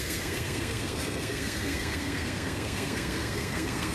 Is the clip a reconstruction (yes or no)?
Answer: yes